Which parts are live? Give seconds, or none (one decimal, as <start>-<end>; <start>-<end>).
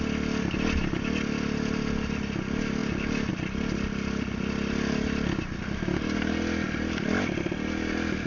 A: 0.0-8.3